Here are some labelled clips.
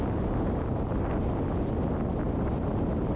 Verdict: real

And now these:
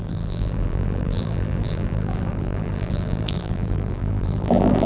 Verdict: fake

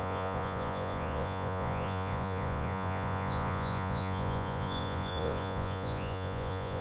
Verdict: fake